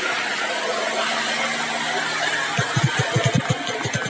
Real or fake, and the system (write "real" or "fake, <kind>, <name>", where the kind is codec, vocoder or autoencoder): real